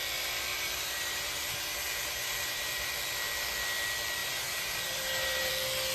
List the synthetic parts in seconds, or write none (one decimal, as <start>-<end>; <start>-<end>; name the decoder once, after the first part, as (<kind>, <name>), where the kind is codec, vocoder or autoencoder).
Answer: 0.5-2.9 (vocoder, BigVGAN v2); 4.2-5.5